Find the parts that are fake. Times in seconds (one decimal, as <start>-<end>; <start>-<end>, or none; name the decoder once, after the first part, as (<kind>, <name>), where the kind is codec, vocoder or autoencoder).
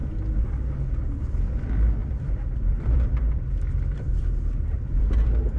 2.0-5.6 (vocoder, BigVGAN v2)